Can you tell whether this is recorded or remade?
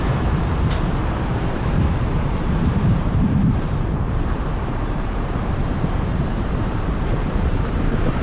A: remade